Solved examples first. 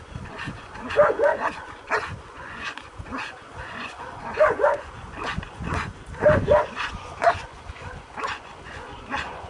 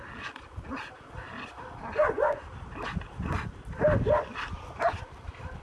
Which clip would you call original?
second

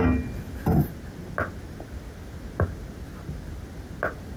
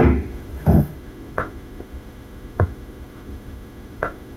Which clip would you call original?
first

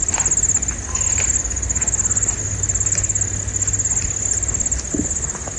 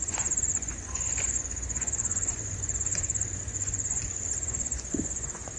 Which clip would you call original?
first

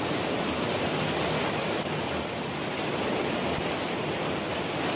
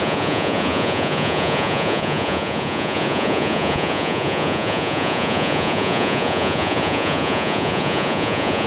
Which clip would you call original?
first